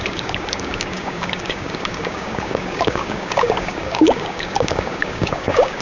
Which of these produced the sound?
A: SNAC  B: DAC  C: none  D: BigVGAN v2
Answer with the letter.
B